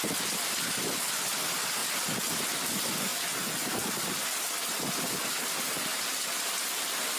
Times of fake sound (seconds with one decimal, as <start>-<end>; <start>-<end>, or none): 1.8-2.7; 5.9-7.2